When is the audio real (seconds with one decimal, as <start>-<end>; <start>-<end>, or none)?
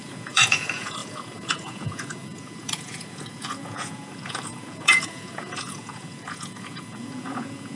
none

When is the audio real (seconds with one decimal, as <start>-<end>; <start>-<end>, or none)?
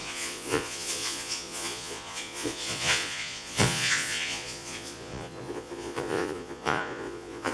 none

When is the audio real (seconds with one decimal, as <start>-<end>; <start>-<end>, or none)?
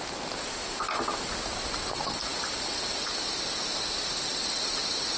0.0-5.2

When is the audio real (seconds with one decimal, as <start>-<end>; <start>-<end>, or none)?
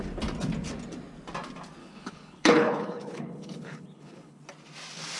0.0-1.8; 4.4-5.2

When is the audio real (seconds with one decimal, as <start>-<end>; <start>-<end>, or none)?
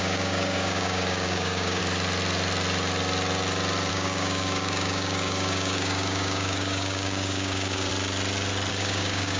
1.8-3.9; 7.9-8.7